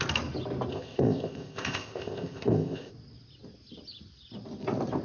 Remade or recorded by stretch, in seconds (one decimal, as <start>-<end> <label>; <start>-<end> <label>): 0.0-0.7 recorded; 0.7-2.9 remade; 2.9-5.0 recorded